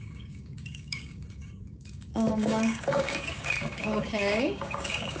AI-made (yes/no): yes